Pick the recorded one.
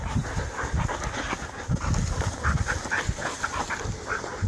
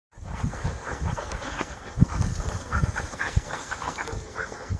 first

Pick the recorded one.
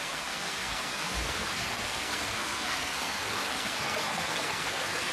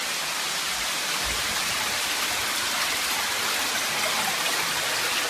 second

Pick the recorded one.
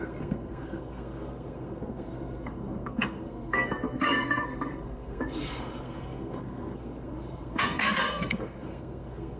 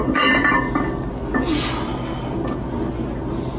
second